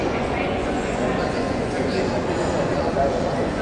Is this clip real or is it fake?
fake